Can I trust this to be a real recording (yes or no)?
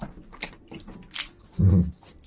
yes